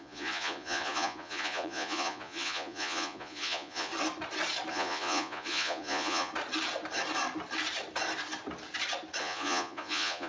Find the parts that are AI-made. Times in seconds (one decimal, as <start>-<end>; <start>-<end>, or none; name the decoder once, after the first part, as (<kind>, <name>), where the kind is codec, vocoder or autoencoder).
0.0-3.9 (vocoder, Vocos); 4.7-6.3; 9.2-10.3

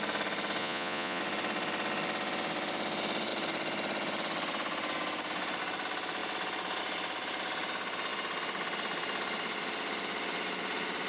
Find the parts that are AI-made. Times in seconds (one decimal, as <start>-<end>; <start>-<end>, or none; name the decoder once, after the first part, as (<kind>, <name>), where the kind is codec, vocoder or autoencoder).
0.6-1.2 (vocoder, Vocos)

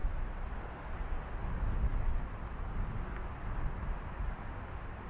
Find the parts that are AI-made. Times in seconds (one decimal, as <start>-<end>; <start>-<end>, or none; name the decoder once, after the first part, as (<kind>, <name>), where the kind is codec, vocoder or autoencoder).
none

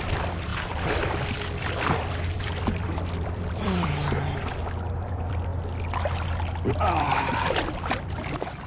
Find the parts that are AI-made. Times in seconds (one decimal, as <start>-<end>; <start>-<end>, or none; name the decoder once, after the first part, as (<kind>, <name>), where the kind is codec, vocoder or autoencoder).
0.0-4.0 (vocoder, BigVGAN v2); 5.0-5.5; 6.8-8.7

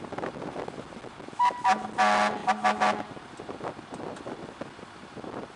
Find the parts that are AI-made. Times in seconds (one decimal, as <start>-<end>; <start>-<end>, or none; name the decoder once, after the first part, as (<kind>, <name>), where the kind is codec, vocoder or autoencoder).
none

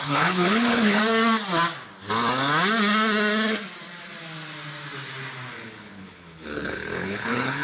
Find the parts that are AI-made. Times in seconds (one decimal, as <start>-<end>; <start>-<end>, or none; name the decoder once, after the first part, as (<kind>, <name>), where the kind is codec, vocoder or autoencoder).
0.0-1.0 (codec, HILCodec); 5.5-7.6

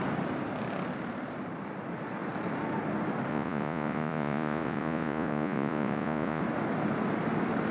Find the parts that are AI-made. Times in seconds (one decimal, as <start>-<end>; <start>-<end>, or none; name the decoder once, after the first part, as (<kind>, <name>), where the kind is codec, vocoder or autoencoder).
3.3-6.4 (vocoder, Vocos)

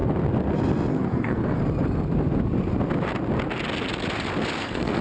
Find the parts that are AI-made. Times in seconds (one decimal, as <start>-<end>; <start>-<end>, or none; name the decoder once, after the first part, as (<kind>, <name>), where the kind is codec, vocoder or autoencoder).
0.9-1.6 (codec, SNAC); 4.6-5.0